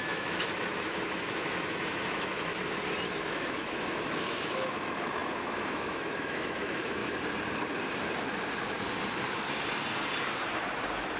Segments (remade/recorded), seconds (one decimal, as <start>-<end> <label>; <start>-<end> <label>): 0.0-2.5 remade; 2.5-3.1 recorded; 3.1-7.0 remade; 7.0-11.2 recorded